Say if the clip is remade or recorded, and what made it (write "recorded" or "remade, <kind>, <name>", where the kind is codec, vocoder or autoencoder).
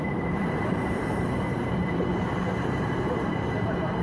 remade, vocoder, BigVGAN v2